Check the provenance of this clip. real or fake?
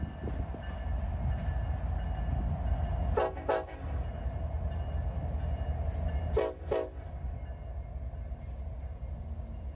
real